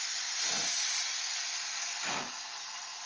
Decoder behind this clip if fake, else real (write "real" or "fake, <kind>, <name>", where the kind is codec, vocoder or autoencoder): real